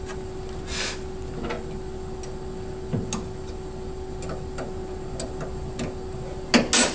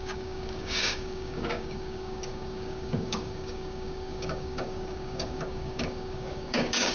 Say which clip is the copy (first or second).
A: second